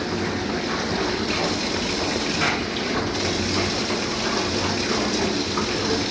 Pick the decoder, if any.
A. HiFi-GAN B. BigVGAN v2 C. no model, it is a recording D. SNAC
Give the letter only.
C